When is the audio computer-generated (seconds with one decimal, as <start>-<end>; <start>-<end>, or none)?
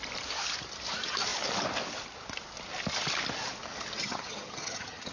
4.0-5.1